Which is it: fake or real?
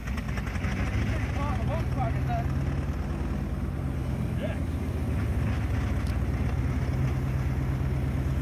real